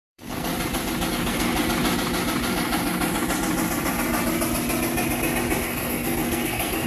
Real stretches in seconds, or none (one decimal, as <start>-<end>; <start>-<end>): 0.5-1.1; 1.5-5.6